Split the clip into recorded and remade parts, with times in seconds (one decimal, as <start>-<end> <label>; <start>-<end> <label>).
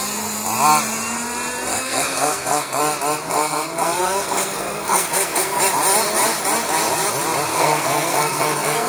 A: 0.0-1.7 recorded; 1.7-2.8 remade; 2.8-3.3 recorded; 3.3-5.6 remade; 5.6-7.5 recorded; 7.5-8.9 remade